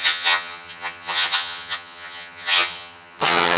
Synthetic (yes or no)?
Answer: yes